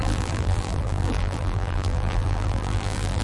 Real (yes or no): no